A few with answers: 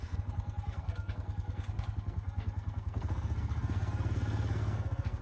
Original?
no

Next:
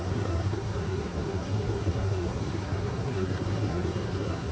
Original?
no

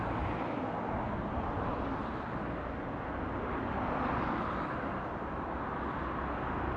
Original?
yes